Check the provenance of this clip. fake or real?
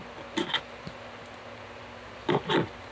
real